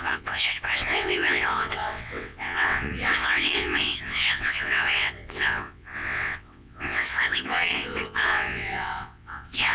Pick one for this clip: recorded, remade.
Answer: remade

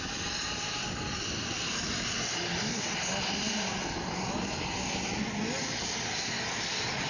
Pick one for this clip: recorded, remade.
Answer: recorded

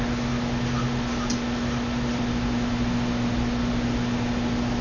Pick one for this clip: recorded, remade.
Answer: recorded